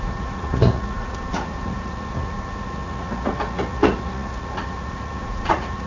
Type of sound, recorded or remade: remade